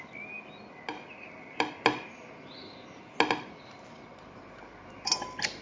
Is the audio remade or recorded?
recorded